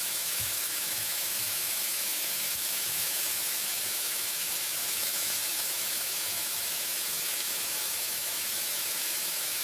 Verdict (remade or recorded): remade